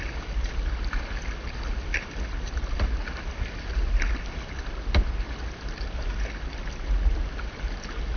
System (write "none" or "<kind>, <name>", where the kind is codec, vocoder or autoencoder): none